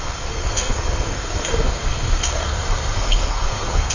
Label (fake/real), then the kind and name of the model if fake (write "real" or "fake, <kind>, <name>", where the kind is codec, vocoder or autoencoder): fake, codec, SNAC